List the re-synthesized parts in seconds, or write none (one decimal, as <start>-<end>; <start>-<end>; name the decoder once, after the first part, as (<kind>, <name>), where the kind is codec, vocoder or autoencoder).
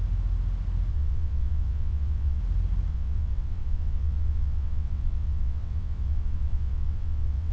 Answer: 0.9-2.4 (vocoder, WaveNeXt); 2.9-7.5